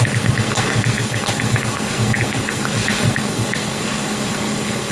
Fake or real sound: fake